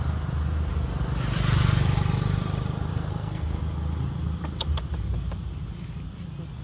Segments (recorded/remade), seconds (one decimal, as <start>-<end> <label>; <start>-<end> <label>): 0.0-2.9 recorded; 2.9-3.6 remade; 3.6-6.6 recorded